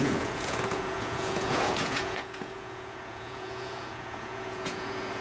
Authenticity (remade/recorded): remade